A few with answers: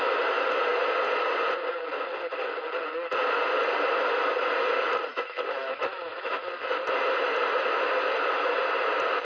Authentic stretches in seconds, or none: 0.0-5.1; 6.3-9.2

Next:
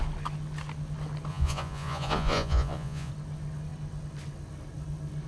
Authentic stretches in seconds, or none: 0.0-1.3; 3.1-5.3

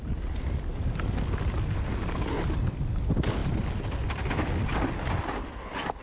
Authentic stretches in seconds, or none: 0.0-0.7; 1.3-6.0

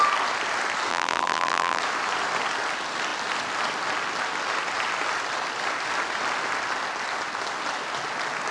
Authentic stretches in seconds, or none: 0.0-0.9; 1.8-8.5

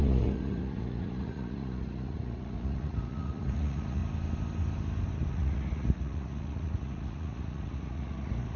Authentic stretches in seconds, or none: 4.0-5.3

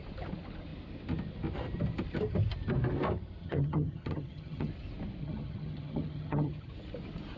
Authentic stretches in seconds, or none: 0.0-3.4; 4.7-5.2; 6.7-7.4

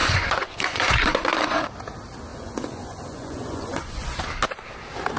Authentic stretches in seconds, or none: 1.7-2.3; 4.2-5.2

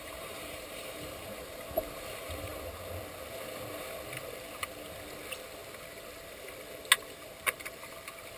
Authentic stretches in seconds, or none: 2.5-8.4